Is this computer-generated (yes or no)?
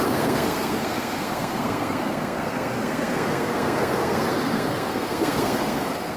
yes